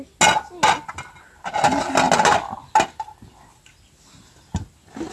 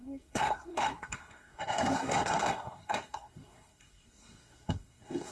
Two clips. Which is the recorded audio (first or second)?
first